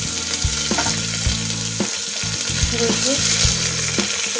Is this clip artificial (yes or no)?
no